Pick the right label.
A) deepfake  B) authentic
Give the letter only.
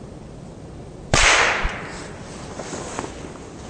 A